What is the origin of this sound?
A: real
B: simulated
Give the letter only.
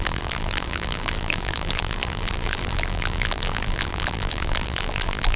B